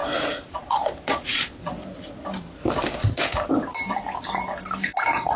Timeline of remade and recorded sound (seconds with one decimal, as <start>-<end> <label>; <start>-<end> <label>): 0.0-0.6 recorded; 0.6-1.8 remade; 1.8-5.0 recorded; 5.0-5.4 remade